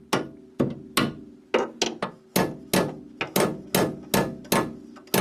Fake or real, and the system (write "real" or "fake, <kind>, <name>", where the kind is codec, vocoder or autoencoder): real